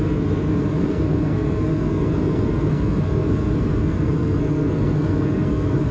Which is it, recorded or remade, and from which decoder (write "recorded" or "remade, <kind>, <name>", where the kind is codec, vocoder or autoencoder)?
remade, codec, SNAC